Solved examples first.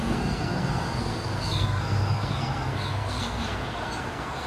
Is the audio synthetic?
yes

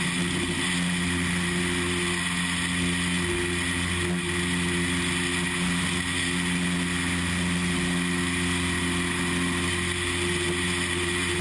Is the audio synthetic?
no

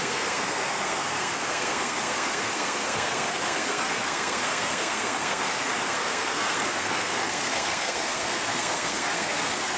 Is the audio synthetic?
yes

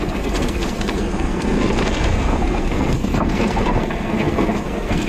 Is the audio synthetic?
yes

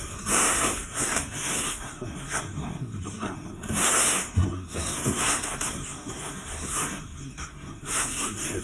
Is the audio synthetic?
yes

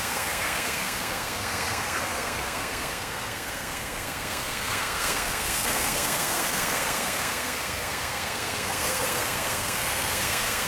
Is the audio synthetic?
yes